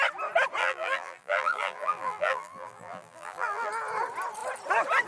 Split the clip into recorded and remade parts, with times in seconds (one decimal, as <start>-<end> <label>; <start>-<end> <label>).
0.0-0.6 recorded; 0.6-3.7 remade; 3.7-5.1 recorded